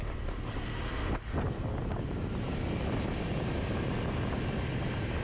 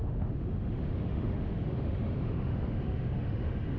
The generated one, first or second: second